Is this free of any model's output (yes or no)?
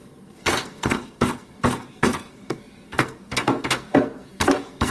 no